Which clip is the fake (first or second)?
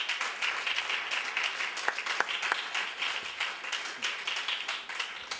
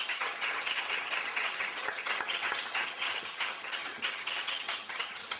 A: second